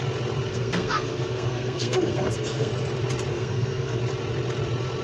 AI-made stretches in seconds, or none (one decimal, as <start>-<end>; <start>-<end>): 0.5-2.7; 3.3-4.0